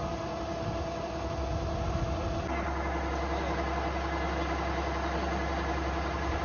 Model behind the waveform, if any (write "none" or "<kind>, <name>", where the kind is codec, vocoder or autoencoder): none